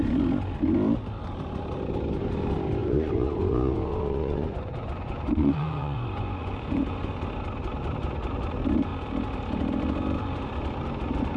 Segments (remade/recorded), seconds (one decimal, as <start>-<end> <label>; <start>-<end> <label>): 0.0-2.8 recorded; 2.8-7.2 remade; 7.2-11.4 recorded